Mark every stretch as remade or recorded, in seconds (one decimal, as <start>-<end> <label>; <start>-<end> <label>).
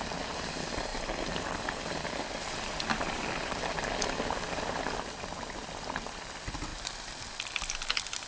0.0-8.3 recorded